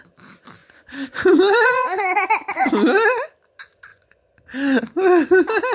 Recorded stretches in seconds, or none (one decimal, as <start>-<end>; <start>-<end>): 0.0-0.6; 2.3-3.9; 4.8-5.7